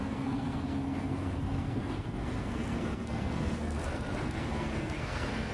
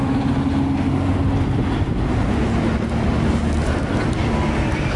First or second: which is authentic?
second